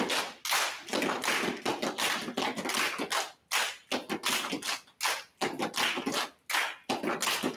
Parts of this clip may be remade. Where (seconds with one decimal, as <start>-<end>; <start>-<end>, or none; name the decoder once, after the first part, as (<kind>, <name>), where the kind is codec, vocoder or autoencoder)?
none